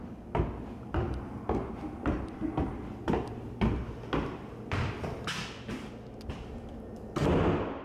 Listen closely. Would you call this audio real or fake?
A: real